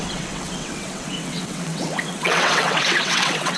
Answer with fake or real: fake